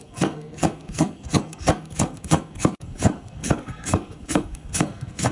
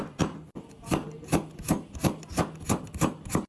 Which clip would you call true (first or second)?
second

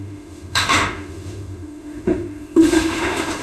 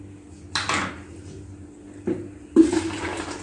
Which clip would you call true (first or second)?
second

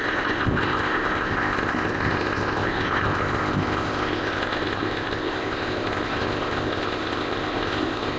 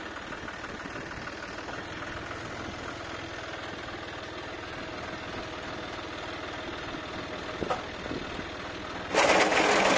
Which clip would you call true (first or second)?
second